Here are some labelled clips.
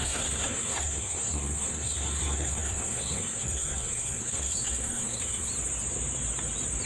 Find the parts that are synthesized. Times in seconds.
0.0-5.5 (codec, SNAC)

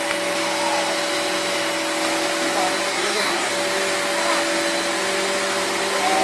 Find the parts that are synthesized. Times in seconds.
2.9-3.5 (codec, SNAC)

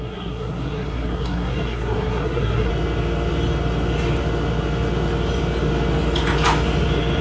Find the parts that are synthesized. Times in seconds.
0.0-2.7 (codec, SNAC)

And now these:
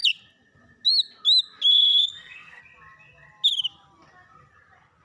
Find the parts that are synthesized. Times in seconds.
1.7-2.6 (codec, SNAC)